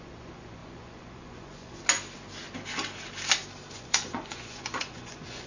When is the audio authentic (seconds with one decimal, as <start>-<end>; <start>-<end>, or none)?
1.8-3.7